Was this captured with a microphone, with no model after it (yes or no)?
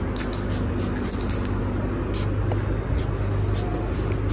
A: yes